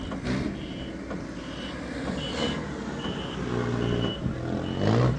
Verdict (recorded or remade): recorded